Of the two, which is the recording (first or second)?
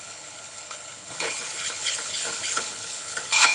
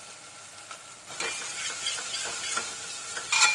second